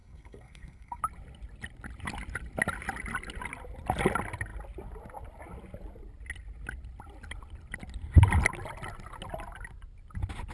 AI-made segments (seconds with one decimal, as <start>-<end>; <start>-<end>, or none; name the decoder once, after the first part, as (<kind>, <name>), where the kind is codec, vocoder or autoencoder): 0.0-1.0 (codec, SNAC)